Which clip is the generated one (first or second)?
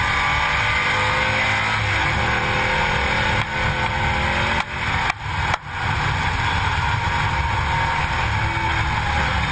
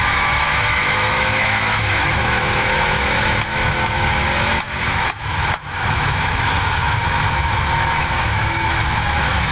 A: second